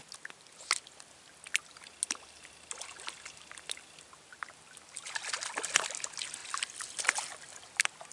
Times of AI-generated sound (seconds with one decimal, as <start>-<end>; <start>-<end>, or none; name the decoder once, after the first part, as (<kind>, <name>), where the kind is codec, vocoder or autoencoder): none